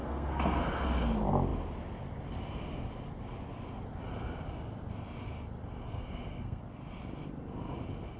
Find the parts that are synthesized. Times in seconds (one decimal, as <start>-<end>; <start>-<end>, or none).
0.0-0.6; 5.9-6.6